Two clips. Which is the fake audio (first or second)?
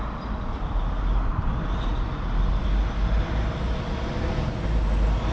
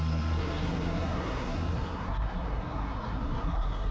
second